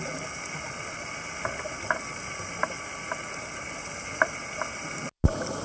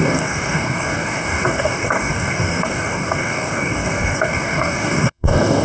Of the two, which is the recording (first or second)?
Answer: first